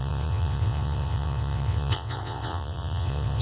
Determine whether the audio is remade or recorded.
remade